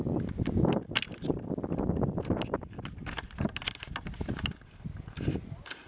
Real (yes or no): yes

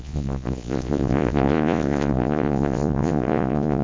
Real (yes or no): no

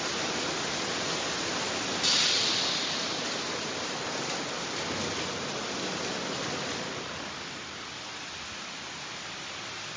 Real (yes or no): yes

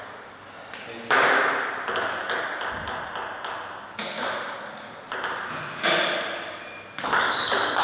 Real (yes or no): yes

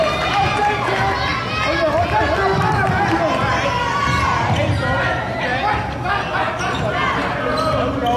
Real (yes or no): yes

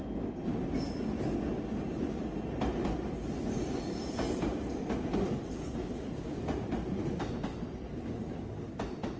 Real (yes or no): yes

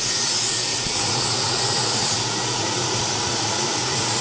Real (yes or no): no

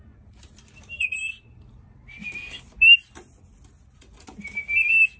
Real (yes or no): yes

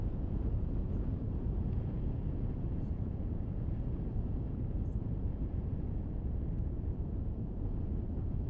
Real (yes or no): no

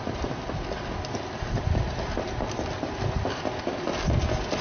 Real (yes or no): yes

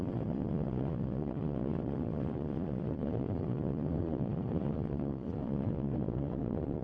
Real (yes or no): no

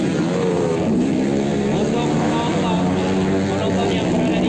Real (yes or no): yes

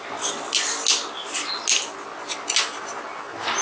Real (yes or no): yes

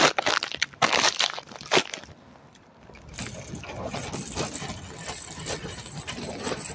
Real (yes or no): yes